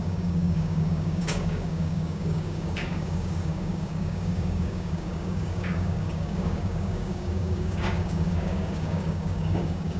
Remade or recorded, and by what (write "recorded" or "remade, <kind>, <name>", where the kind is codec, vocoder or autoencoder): remade, codec, DAC